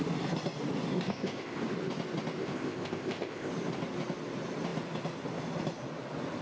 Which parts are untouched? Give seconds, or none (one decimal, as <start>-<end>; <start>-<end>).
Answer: 0.0-0.9; 1.6-2.4; 3.5-6.4